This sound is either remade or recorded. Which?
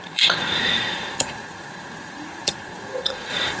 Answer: remade